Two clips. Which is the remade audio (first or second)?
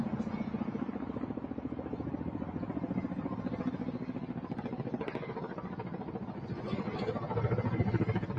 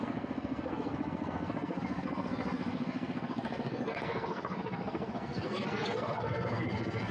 second